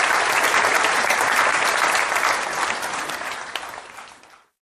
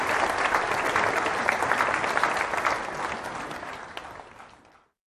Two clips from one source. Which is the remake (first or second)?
first